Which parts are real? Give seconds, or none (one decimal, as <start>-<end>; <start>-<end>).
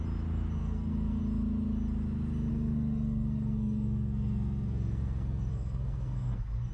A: 0.0-0.6; 1.2-2.5